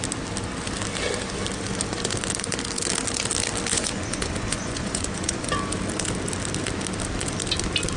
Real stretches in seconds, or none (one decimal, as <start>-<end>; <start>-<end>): 0.0-3.7; 5.5-8.0